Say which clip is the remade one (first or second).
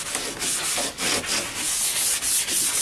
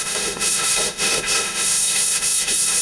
second